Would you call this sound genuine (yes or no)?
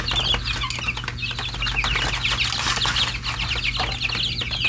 yes